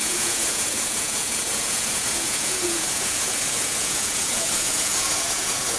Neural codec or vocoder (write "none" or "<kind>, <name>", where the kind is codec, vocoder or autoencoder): vocoder, Vocos